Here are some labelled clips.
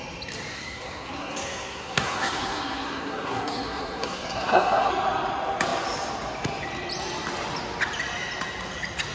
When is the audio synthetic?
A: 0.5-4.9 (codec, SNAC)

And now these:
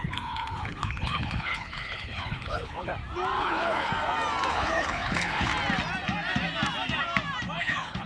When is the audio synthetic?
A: 0.0-2.9 (codec, HILCodec); 3.4-3.9; 4.5-5.5; 7.6-8.1